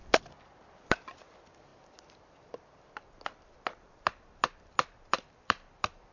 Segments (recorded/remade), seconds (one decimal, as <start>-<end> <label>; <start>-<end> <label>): 0.0-6.1 recorded